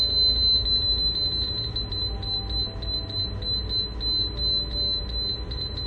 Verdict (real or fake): real